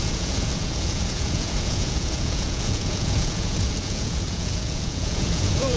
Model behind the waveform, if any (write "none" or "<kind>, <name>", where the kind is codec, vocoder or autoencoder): vocoder, Vocos